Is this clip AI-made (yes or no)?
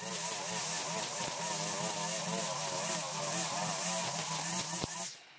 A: no